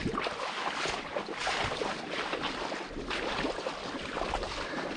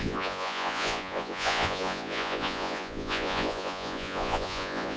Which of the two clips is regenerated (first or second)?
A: second